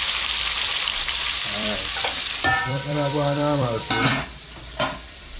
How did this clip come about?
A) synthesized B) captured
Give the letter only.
A